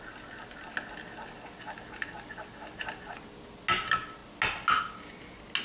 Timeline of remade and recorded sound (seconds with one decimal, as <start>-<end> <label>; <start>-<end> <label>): 0.0-5.6 recorded